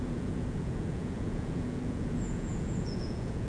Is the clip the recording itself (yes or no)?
no